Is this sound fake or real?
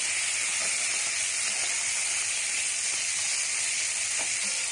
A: real